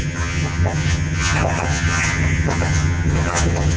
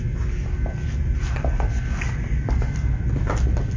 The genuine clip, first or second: second